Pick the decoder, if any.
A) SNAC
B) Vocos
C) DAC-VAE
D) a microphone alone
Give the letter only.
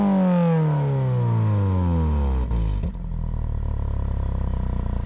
D